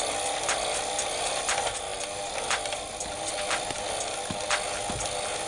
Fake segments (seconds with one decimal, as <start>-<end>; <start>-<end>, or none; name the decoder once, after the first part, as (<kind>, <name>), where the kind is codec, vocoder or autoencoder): none